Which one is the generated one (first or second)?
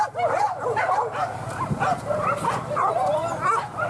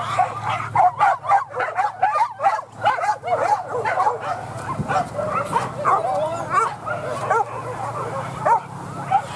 first